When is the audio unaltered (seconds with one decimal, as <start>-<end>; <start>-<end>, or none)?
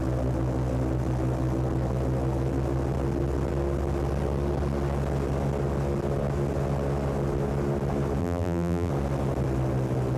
0.0-8.2; 8.9-10.2